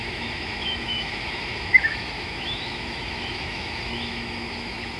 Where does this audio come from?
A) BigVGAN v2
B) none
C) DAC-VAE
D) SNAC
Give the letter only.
C